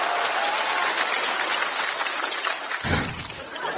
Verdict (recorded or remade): recorded